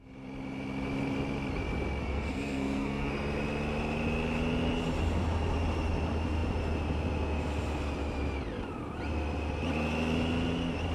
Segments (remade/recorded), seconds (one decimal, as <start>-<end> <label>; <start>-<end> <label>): 0.0-2.0 recorded; 2.0-3.1 remade; 3.1-10.9 recorded